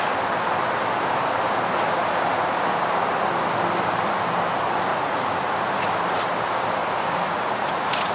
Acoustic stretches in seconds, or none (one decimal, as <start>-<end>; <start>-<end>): 0.0-4.9; 5.9-6.8